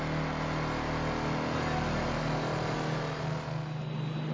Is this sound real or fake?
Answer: real